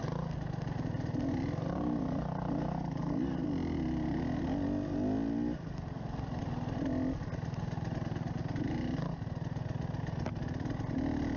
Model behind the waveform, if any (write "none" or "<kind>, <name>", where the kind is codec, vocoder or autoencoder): none